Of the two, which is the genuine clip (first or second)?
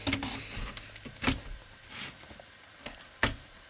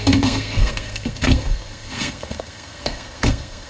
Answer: first